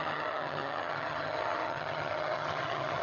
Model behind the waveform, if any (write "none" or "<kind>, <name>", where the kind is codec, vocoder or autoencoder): vocoder, HiFi-GAN